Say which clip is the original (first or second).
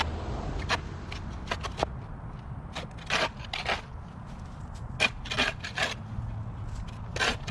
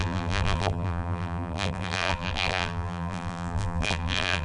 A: first